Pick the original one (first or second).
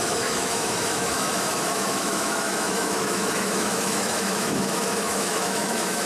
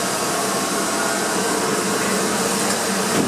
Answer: second